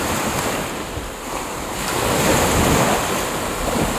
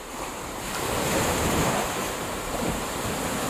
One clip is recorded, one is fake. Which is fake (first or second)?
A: second